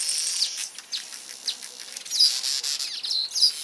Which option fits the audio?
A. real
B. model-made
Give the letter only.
A